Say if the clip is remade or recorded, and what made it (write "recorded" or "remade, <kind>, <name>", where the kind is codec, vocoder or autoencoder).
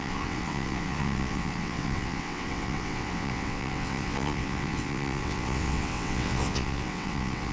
remade, vocoder, WaveNeXt